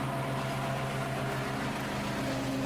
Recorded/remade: recorded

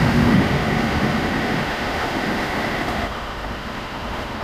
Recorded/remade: remade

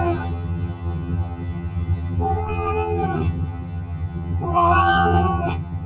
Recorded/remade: remade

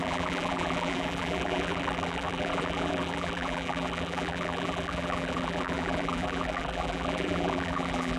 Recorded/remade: remade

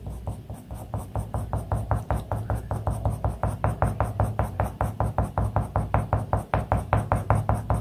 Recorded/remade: recorded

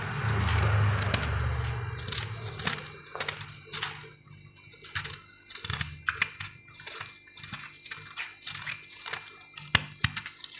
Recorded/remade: recorded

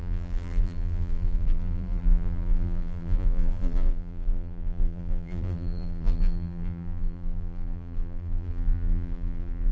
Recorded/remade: remade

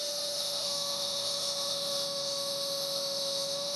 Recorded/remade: remade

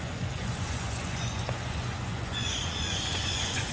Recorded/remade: remade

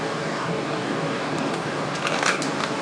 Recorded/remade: remade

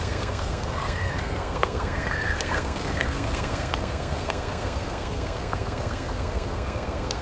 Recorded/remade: remade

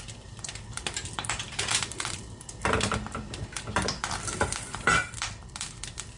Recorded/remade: remade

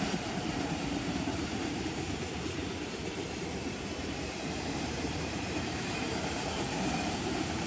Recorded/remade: remade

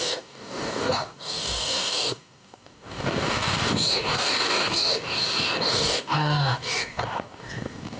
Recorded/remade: remade